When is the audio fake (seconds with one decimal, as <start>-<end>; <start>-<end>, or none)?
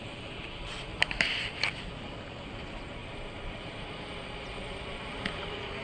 0.9-1.6; 3.0-3.6